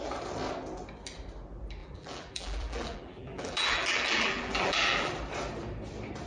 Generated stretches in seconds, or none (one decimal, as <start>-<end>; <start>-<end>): 1.8-5.1